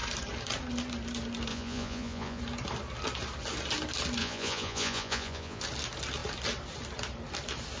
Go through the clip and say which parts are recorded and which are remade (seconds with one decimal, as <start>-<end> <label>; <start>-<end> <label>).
0.0-1.5 recorded; 1.5-2.4 remade; 2.4-4.2 recorded; 4.2-5.6 remade; 5.6-7.8 recorded